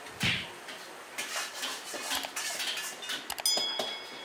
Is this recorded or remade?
recorded